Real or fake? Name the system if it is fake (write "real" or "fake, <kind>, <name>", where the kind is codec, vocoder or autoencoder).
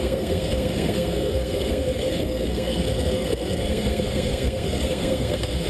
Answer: fake, codec, SNAC